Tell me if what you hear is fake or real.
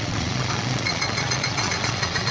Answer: fake